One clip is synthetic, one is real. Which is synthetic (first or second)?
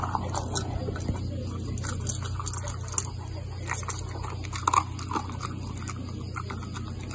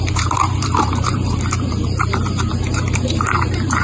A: second